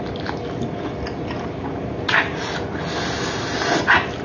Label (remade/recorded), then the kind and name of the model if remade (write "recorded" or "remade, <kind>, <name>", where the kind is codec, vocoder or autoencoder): recorded